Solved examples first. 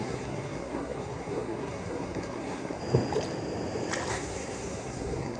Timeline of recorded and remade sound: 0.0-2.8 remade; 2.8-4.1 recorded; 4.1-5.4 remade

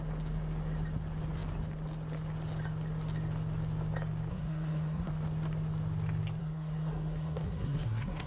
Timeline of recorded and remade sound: 0.0-4.3 recorded; 4.3-5.1 remade; 5.1-6.4 recorded; 6.4-8.3 remade